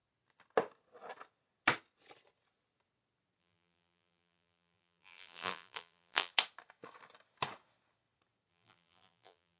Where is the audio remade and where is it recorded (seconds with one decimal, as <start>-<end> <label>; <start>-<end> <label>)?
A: 0.0-3.4 recorded; 3.4-6.3 remade; 6.3-8.5 recorded; 8.5-9.6 remade